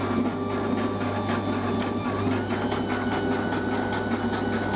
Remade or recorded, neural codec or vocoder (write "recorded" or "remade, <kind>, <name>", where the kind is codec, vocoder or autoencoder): recorded